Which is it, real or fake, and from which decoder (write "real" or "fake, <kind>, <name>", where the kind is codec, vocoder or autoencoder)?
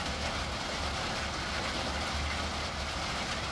real